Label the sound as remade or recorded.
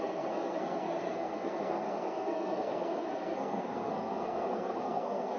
remade